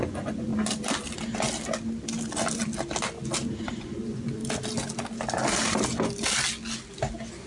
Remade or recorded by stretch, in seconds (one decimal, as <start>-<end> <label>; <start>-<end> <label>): 0.0-0.5 remade; 0.5-3.6 recorded; 3.6-4.4 remade; 4.4-7.5 recorded